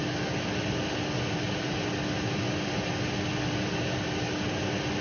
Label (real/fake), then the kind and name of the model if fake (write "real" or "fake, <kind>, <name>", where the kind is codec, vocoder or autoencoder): real